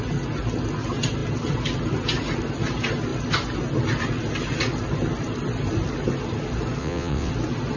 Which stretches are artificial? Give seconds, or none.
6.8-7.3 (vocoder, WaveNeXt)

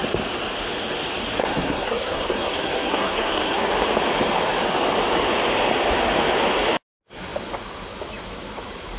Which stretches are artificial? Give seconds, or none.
1.4-3.7 (codec, SNAC)